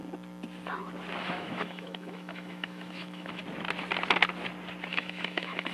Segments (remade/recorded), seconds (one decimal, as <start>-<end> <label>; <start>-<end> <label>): 0.0-1.2 recorded; 1.2-3.4 remade; 3.4-4.9 recorded; 4.9-5.7 remade